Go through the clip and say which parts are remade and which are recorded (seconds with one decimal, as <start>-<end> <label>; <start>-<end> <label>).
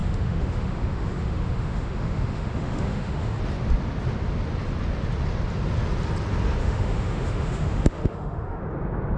0.0-3.4 remade; 3.4-6.6 recorded; 6.6-8.6 remade; 8.6-9.2 recorded